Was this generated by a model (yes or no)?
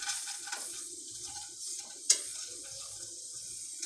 yes